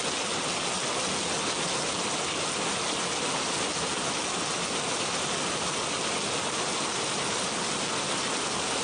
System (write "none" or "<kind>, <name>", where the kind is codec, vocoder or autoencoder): none